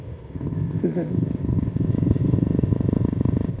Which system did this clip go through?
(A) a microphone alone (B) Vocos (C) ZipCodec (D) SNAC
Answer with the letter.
C